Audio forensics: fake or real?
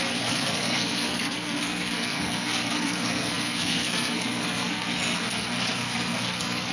fake